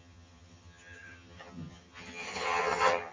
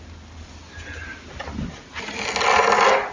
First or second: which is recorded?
second